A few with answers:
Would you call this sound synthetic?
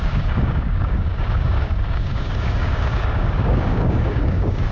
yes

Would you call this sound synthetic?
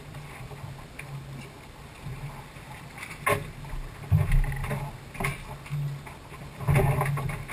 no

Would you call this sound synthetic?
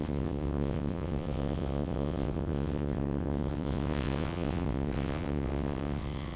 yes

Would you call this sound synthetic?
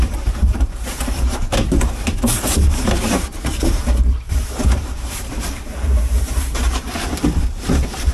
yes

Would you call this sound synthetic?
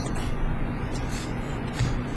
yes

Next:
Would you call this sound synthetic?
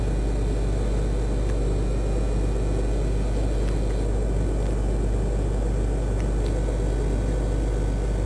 no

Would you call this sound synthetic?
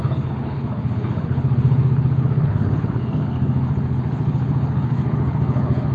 yes